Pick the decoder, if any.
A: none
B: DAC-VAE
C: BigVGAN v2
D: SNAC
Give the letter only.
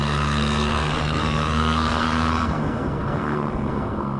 D